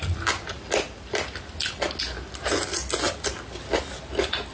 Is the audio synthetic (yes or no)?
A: no